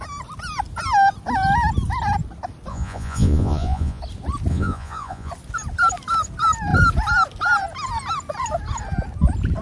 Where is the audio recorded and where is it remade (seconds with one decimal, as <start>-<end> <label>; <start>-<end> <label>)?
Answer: 0.0-2.7 recorded; 2.7-4.0 remade; 4.0-4.5 recorded; 4.5-5.3 remade; 5.3-9.6 recorded